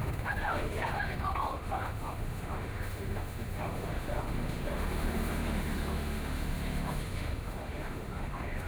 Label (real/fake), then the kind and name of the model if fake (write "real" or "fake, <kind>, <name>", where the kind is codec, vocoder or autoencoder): fake, autoencoder, DAC-VAE